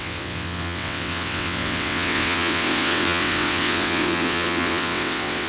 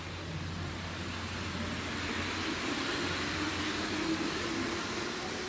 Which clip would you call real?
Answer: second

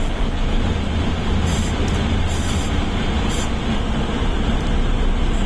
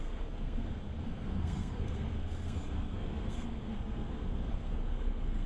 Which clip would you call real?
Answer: first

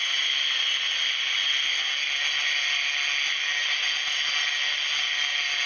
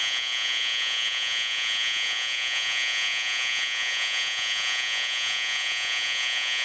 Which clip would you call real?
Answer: first